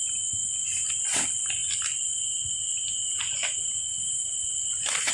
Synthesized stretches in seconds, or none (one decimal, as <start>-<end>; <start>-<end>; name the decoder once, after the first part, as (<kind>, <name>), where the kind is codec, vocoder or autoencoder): none